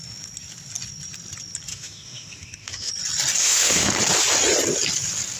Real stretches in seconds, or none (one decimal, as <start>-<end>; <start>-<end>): 0.0-1.7; 2.9-3.4; 3.9-5.4